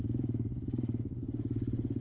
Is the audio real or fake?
real